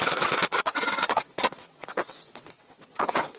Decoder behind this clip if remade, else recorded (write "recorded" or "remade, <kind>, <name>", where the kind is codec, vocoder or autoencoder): remade, vocoder, WaveNeXt